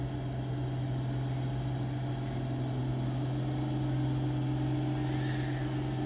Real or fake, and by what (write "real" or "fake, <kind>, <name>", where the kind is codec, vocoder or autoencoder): real